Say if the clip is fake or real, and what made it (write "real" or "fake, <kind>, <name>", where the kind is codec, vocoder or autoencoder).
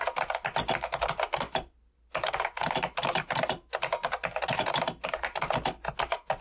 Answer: real